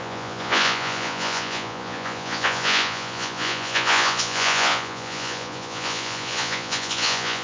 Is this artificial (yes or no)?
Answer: yes